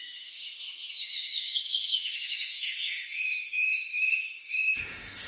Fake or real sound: fake